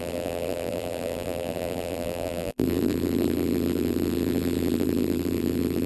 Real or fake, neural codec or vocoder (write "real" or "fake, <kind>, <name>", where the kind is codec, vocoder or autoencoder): fake, vocoder, BigVGAN v2